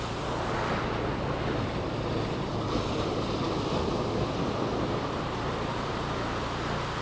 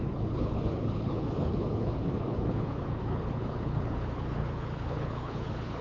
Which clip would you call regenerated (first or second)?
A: second